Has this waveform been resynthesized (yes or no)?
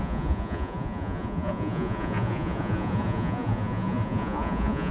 yes